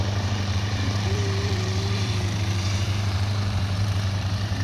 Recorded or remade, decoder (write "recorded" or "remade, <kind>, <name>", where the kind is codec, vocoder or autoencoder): remade, vocoder, BigVGAN v2